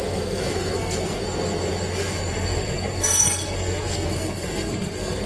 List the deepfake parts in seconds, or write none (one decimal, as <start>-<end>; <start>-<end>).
0.0-1.2; 2.3-5.3